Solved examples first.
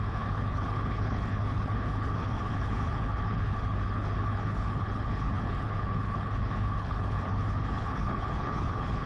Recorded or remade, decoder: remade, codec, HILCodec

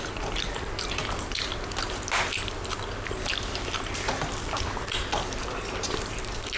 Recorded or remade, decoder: recorded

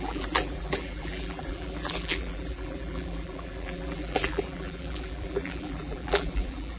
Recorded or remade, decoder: remade, vocoder, BigVGAN v2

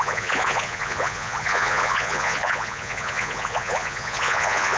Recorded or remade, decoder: remade, vocoder, Vocos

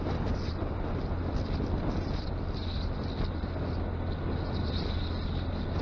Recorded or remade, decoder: recorded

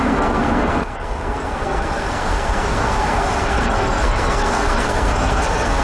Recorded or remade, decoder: remade, codec, SNAC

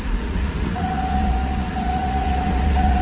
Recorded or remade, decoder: remade, vocoder, Vocos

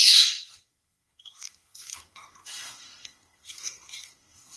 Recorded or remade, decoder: remade, codec, SNAC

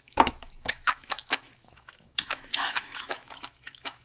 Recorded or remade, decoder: remade, autoencoder, DAC-VAE